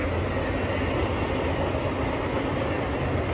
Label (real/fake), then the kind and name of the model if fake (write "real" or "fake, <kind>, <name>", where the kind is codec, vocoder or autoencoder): real